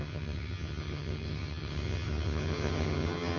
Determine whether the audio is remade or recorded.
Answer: remade